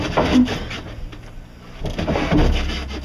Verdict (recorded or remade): recorded